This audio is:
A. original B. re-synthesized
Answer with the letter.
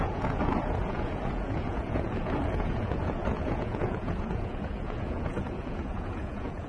B